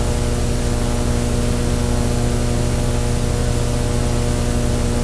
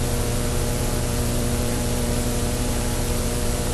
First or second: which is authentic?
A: first